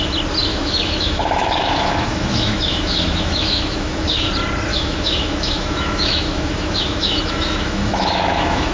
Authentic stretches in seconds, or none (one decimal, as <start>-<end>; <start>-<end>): 0.0-0.5; 4.3-4.7